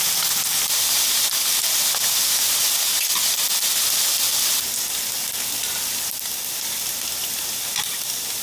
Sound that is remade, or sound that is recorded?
recorded